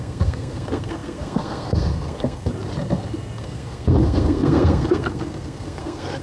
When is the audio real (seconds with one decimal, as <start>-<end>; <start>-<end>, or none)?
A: 2.5-3.4